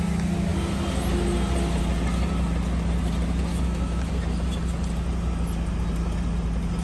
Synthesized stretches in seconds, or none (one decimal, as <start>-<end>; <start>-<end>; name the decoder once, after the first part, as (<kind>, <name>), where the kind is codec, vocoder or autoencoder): 3.5-4.1 (autoencoder, DAC-VAE)